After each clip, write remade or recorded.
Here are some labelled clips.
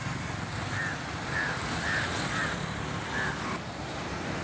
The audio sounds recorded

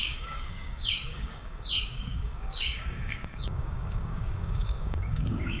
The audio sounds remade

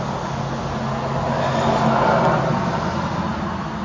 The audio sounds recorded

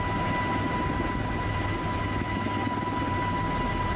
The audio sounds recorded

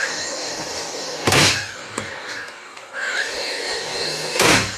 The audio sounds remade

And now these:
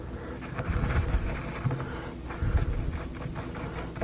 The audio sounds recorded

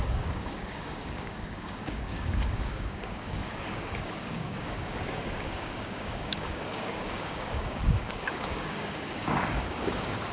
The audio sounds remade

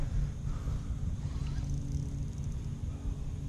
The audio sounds recorded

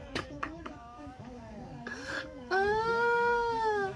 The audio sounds remade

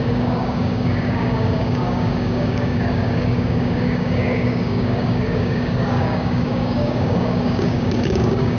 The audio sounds remade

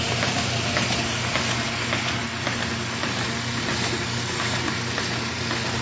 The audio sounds recorded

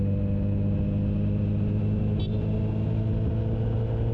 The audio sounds recorded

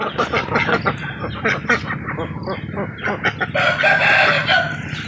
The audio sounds recorded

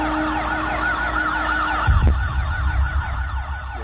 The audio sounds recorded